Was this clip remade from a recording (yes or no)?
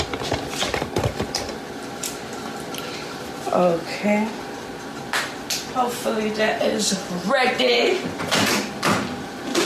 no